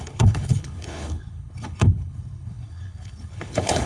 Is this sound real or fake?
fake